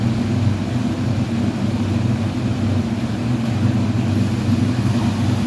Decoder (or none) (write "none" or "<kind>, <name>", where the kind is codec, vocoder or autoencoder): none